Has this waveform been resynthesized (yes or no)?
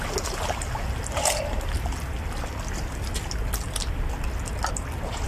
no